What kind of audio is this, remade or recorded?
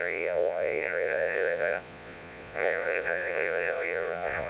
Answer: remade